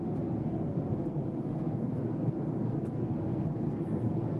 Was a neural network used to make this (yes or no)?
yes